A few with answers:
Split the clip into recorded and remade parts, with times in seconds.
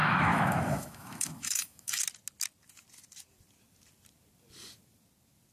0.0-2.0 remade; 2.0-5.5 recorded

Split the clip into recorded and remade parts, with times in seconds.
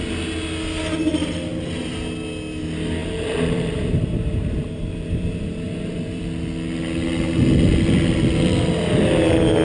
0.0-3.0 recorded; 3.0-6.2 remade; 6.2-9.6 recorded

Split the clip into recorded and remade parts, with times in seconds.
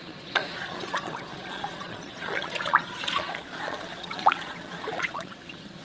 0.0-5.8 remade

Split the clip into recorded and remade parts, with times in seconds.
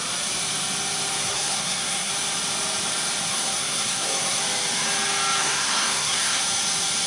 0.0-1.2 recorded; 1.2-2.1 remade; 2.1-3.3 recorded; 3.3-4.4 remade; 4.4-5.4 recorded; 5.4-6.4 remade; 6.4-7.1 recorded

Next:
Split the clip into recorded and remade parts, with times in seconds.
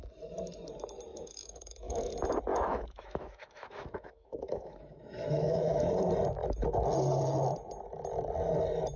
0.0-1.1 recorded; 1.1-2.1 remade; 2.1-2.5 recorded; 2.5-5.9 remade; 5.9-9.0 recorded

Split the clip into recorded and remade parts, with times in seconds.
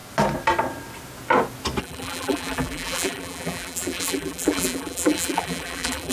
0.0-1.8 recorded; 1.8-6.1 remade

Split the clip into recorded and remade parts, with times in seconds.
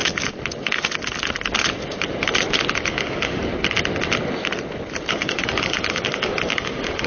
0.0-2.9 recorded; 2.9-3.4 remade; 3.4-5.1 recorded; 5.1-7.1 remade